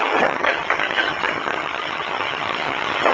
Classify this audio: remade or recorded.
remade